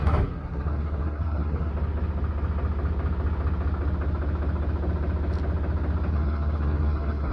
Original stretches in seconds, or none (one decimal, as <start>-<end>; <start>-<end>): 1.7-6.1